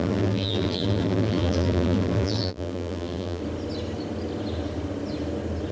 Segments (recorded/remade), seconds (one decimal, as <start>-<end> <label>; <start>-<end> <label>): 0.0-3.4 remade; 3.4-5.7 recorded